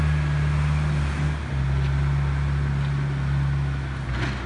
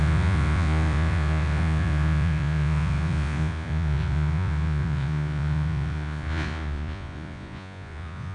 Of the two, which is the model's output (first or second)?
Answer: second